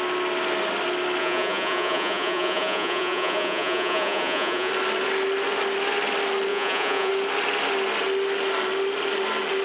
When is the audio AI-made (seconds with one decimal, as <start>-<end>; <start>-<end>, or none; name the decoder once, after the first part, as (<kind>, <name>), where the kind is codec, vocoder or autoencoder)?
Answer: 1.2-4.7 (vocoder, Vocos); 6.5-7.1